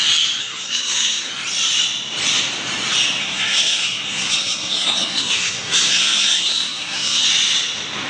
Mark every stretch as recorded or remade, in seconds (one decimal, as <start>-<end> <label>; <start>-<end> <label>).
0.0-0.4 recorded; 0.4-1.3 remade; 1.3-3.2 recorded; 3.2-7.3 remade; 7.3-8.1 recorded